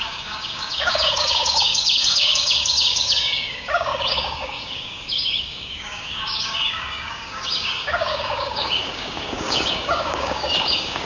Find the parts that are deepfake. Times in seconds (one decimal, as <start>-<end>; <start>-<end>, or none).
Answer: 0.0-11.1